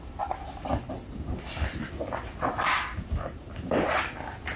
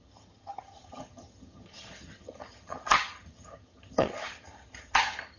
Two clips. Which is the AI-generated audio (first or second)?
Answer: second